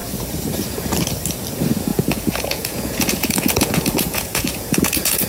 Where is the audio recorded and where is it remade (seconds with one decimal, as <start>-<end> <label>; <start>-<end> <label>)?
0.0-1.9 recorded; 1.9-5.3 remade